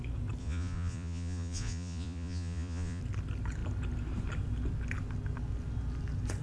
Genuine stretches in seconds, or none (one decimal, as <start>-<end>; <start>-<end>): 0.0-0.4; 3.0-6.4